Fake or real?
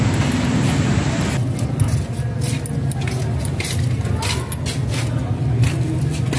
real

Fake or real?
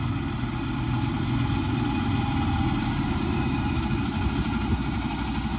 real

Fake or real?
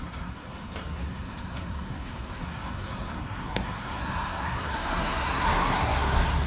fake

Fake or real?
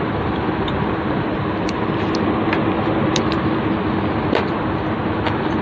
real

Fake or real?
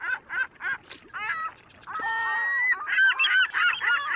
real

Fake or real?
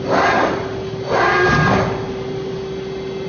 real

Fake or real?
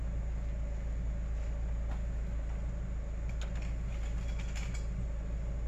real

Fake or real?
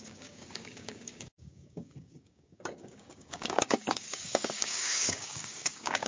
fake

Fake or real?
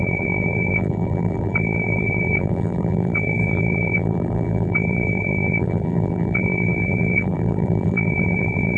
fake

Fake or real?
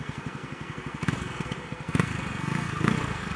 fake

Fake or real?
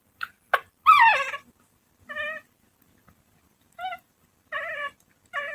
fake